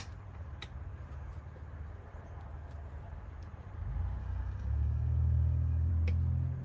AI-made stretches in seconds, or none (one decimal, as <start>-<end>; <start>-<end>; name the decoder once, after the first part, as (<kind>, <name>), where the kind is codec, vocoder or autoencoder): 4.2-5.9 (codec, DAC)